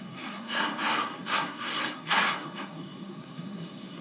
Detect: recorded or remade remade